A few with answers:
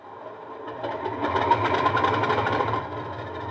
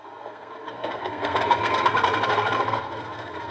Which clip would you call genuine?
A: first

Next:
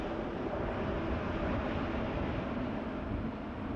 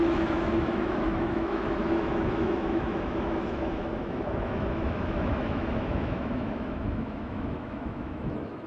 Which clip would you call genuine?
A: first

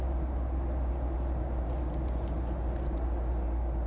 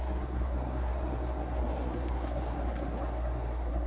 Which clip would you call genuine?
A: first